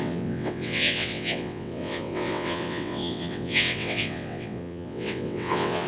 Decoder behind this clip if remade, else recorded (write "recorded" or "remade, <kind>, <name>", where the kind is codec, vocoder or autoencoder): remade, vocoder, WaveNeXt